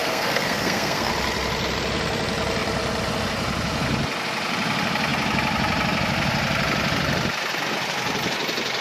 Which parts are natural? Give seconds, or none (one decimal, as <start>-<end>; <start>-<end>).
1.1-8.8